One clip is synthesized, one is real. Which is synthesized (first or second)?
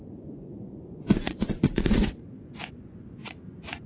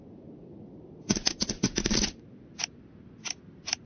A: first